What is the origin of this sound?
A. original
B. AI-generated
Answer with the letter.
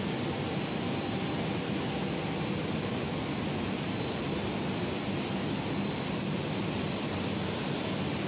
A